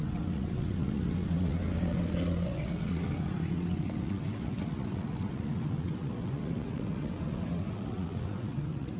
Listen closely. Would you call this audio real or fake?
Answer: fake